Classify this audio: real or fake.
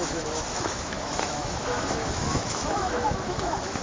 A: fake